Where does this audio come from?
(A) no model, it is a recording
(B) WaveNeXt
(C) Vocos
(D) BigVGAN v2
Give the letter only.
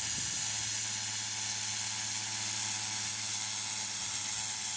A